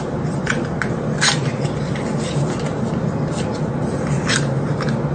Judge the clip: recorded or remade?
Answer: recorded